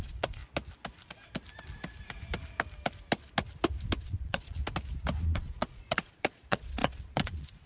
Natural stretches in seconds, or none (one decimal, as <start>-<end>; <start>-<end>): 0.4-4.0; 4.6-5.2